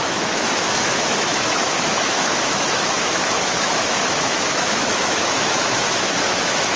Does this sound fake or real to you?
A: fake